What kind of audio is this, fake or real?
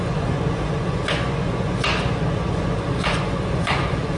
fake